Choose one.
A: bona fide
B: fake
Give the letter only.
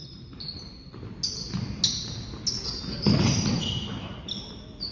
A